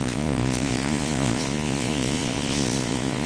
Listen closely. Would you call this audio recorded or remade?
remade